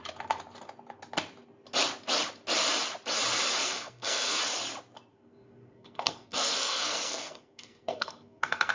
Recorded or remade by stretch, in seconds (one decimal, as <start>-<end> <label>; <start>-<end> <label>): 0.0-3.6 recorded; 3.6-4.4 remade; 4.4-5.1 recorded; 5.1-8.7 remade